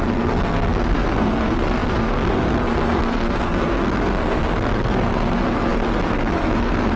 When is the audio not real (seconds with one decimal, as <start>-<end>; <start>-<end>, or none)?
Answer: 0.0-7.0